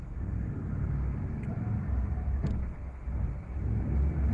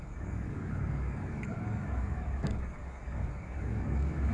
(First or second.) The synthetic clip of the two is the second